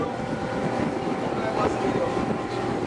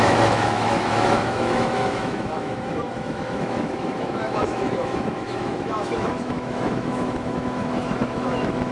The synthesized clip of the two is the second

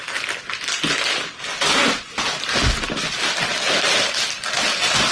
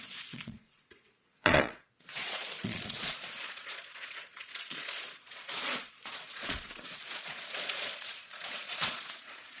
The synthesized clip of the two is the second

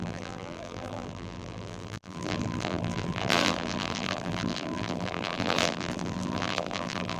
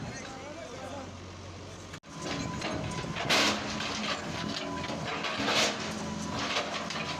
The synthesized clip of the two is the first